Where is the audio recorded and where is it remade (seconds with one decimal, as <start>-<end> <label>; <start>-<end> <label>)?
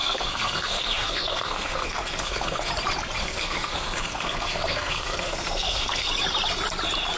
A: 0.0-2.7 remade; 2.7-3.2 recorded; 3.2-6.1 remade; 6.1-7.2 recorded